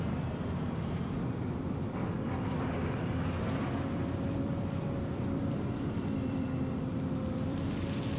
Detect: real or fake fake